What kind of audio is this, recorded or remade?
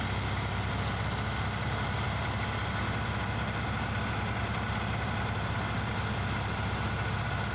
recorded